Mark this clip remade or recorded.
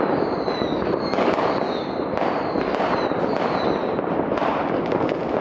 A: recorded